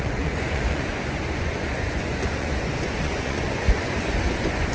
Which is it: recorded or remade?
remade